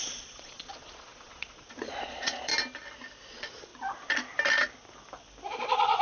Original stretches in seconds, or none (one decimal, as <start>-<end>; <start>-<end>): 2.5-3.3; 3.7-5.5